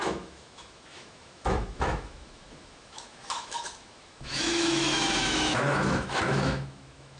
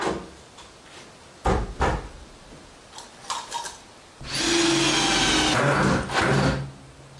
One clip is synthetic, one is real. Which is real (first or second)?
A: second